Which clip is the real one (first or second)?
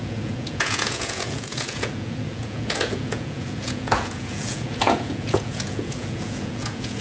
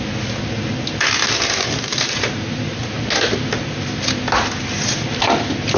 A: second